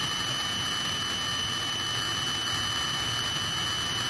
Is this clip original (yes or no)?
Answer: yes